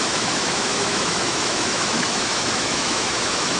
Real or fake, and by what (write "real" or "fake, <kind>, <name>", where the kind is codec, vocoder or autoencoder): fake, autoencoder, DAC-VAE